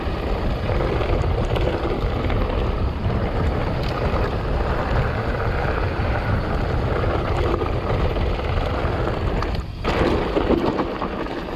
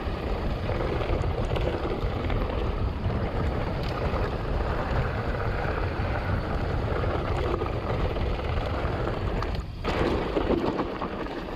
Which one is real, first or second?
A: first